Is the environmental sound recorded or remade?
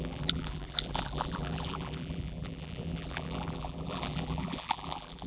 remade